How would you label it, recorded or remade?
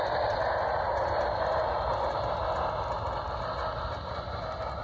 recorded